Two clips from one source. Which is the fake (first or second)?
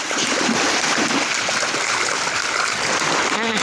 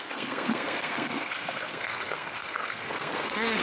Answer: second